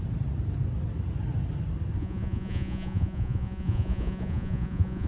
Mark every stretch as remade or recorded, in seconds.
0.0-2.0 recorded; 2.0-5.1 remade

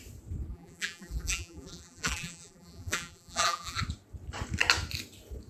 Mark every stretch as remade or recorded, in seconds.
0.0-0.5 recorded; 0.5-3.8 remade; 3.8-5.5 recorded

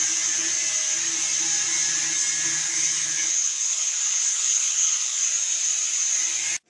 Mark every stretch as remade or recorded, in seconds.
0.0-2.6 recorded; 2.6-5.2 remade; 5.2-6.7 recorded

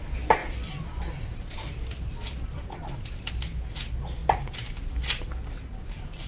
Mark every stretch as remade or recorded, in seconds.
0.0-6.3 recorded